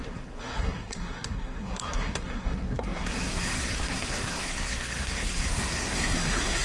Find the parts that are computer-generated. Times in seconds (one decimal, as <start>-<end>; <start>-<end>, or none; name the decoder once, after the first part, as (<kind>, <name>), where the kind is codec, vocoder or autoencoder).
0.0-6.6 (codec, SNAC)